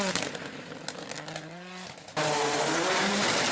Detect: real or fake real